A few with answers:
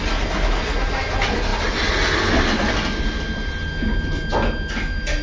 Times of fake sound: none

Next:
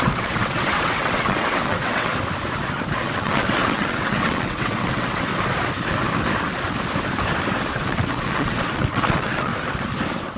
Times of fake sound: 0.0-2.1 (vocoder, WaveNeXt); 3.0-5.3; 7.7-9.5

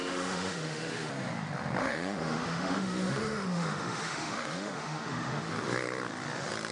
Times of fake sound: 0.0-1.1 (autoencoder, DAC-VAE); 1.8-5.5

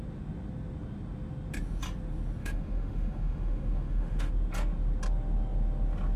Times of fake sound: 2.4-4.3 (autoencoder, DAC-VAE)

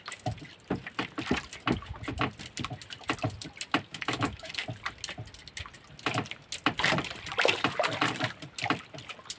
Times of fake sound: 3.9-4.5 (autoencoder, DAC-VAE)

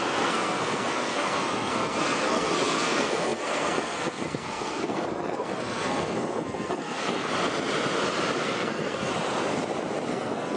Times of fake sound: 0.0-7.3 (codec, SNAC); 8.4-9.1; 10.1-10.6

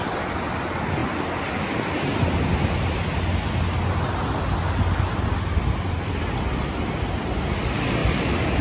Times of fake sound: 8.0-8.6 (vocoder, BigVGAN v2)

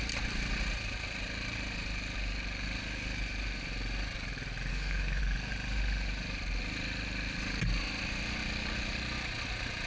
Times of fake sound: 4.7-5.2 (codec, SNAC)